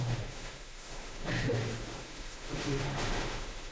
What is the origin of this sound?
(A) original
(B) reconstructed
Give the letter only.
B